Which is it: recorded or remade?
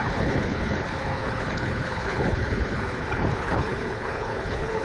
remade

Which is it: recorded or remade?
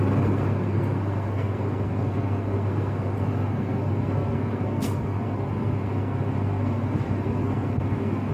remade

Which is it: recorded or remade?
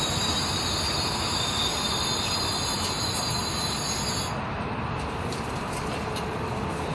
recorded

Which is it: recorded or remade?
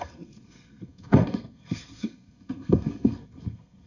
remade